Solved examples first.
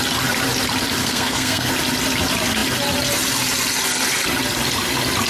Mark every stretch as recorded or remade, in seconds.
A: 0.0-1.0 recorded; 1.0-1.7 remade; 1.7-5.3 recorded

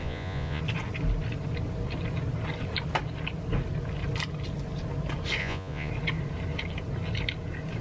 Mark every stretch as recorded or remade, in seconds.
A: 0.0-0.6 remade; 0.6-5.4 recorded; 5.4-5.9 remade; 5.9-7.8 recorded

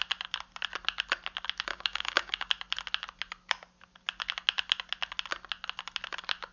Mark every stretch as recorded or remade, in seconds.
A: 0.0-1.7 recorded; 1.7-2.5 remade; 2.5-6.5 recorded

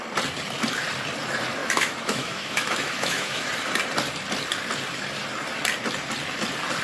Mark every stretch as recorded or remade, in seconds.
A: 0.0-1.6 recorded; 1.6-3.5 remade; 3.5-6.8 recorded

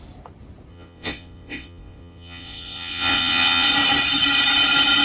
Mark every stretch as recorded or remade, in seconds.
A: 0.0-0.7 recorded; 0.7-3.7 remade; 3.7-5.0 recorded

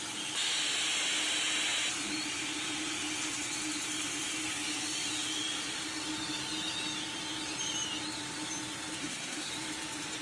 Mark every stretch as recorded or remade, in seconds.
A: 0.0-9.0 recorded; 9.0-9.5 remade; 9.5-10.2 recorded